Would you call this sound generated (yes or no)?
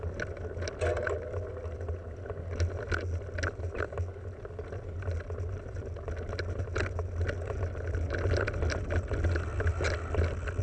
no